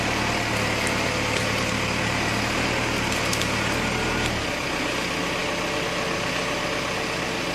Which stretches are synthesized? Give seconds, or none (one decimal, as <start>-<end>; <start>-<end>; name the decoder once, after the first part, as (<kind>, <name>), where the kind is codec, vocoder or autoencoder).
none